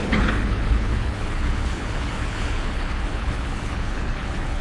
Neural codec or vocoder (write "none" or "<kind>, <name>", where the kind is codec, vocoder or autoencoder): codec, HILCodec